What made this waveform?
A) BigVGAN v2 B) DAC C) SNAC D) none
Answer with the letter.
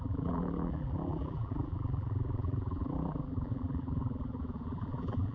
A